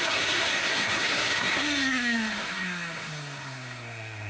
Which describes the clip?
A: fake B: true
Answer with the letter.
A